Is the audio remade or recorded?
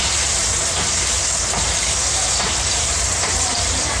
remade